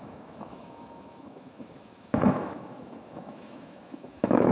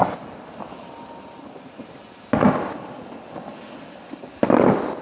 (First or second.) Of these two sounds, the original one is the second